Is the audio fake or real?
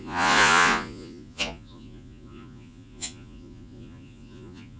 fake